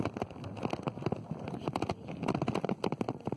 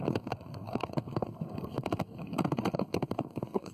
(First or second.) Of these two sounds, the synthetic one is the second